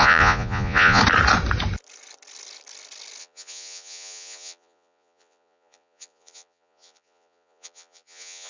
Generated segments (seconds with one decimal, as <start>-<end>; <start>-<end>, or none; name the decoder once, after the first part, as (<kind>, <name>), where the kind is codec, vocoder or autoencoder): 0.0-1.0 (vocoder, Vocos); 3.2-8.5